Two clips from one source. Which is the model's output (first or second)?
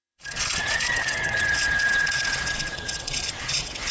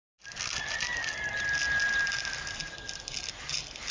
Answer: first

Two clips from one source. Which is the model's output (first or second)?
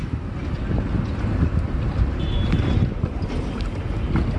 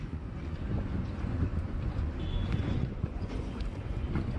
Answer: second